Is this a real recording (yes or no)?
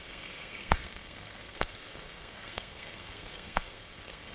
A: no